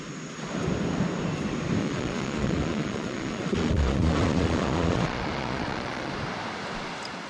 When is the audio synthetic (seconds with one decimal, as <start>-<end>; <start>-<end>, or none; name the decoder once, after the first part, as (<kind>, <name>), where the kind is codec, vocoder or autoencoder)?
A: 1.8-6.1 (vocoder, Vocos)